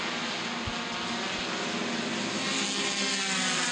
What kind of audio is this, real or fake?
real